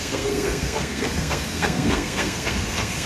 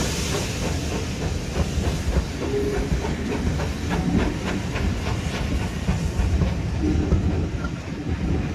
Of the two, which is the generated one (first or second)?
first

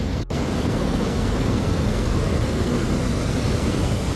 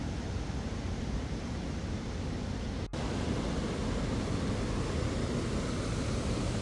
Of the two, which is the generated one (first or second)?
first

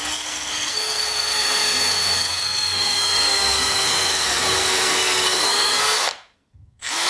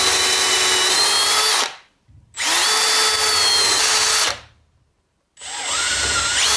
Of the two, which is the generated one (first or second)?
first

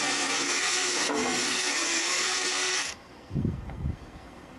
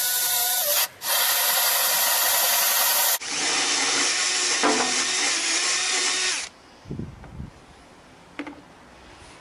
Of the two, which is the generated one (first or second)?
first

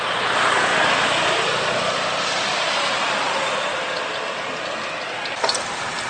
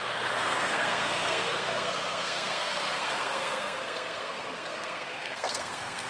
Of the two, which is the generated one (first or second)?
second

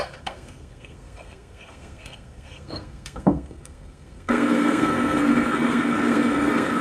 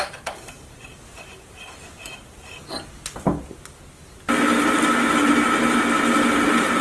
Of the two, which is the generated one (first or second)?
first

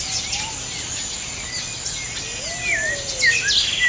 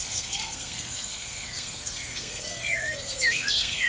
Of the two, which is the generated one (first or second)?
second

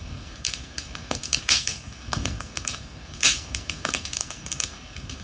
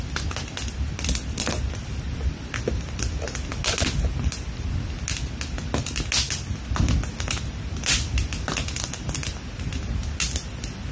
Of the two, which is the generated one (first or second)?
first